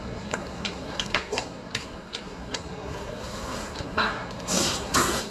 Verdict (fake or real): fake